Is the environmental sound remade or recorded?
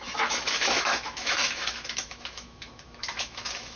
remade